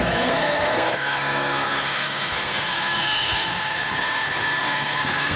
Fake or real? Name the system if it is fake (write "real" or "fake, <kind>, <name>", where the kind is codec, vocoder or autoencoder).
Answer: fake, codec, SNAC